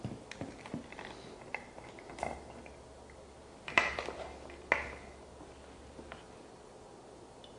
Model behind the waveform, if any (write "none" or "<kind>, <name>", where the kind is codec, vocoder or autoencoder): none